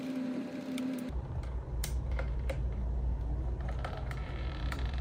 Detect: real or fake fake